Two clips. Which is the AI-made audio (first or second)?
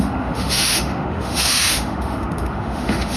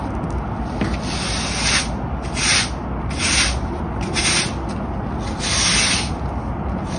first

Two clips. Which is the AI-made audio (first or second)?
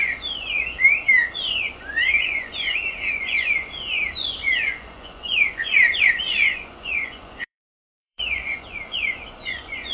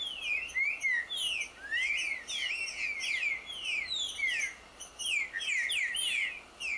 first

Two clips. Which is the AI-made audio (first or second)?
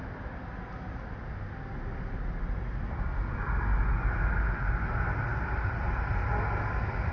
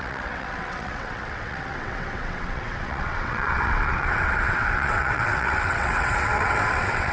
second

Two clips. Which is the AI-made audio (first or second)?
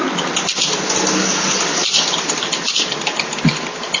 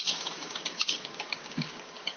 second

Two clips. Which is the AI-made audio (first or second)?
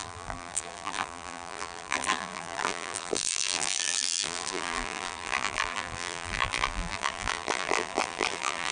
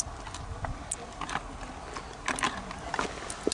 first